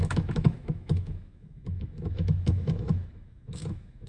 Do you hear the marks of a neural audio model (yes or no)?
yes